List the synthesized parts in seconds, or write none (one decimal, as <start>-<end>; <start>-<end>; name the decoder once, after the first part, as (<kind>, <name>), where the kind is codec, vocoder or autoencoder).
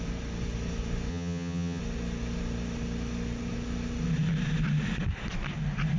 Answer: 1.1-1.8 (vocoder, HiFi-GAN)